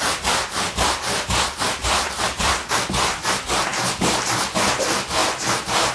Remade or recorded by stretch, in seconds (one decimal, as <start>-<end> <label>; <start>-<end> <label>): 0.0-1.8 recorded; 1.8-2.5 remade; 2.5-5.9 recorded